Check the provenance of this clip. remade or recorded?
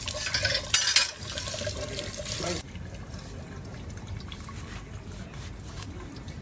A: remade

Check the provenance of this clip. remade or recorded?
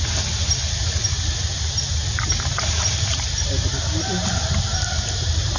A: recorded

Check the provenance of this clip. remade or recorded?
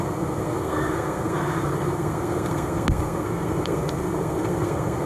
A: remade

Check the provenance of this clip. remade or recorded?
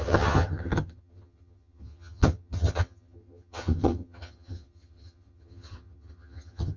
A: remade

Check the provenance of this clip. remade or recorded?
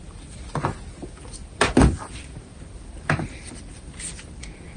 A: recorded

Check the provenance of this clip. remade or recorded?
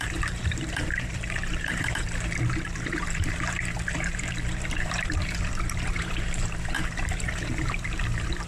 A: remade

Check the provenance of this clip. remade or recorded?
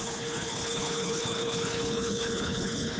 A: remade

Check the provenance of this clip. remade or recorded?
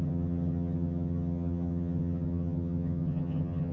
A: remade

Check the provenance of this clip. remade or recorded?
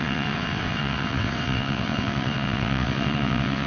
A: remade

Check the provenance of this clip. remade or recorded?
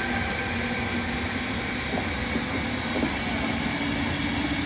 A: recorded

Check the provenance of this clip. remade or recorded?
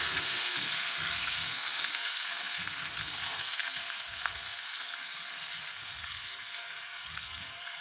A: remade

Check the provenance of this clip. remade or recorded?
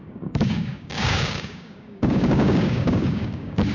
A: remade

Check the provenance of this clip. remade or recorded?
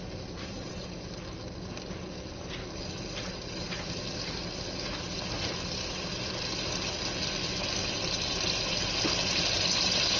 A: recorded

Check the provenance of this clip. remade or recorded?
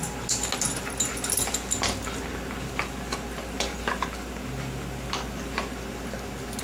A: recorded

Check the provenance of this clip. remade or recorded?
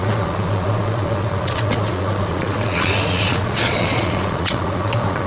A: remade